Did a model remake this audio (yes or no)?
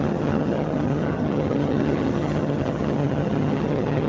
yes